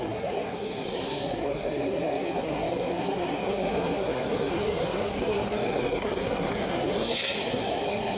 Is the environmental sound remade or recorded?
remade